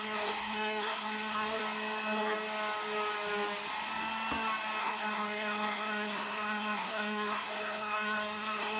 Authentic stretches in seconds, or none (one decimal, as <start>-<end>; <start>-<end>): 1.6-4.8

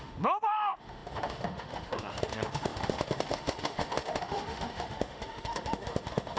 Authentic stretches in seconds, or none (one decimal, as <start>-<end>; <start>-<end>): none

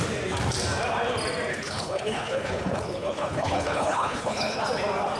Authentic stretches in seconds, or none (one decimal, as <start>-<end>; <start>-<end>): 0.0-1.5; 4.6-5.2

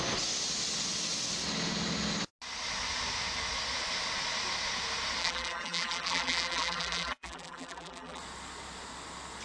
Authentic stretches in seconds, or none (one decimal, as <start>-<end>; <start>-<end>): 0.0-5.2; 8.2-9.4

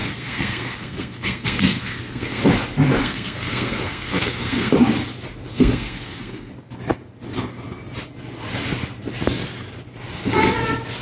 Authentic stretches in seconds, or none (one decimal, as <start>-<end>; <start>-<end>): 2.4-3.0; 4.7-5.5; 6.5-11.0

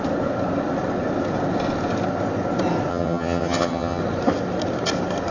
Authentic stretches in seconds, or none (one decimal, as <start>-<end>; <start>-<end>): 0.0-2.9; 4.0-5.3